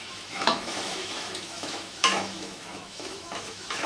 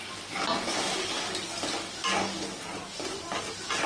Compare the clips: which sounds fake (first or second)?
first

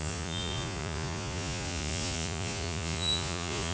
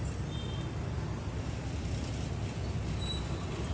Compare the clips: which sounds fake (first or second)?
first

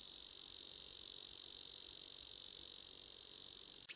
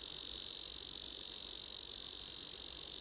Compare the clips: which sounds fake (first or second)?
first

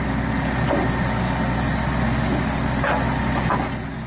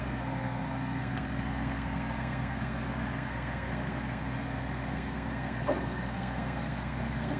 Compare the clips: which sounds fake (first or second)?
second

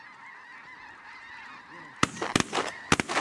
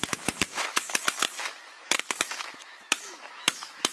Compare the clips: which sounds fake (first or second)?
second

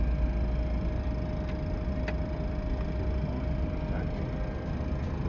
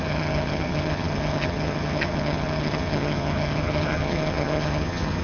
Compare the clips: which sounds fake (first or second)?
second